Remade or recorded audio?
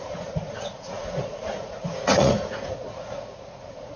remade